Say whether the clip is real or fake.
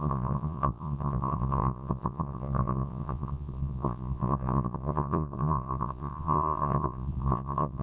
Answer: fake